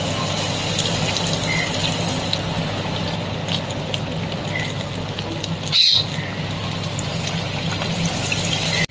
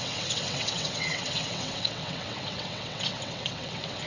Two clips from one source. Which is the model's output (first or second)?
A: second